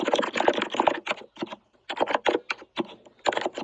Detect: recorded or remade recorded